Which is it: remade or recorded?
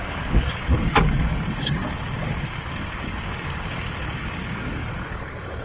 remade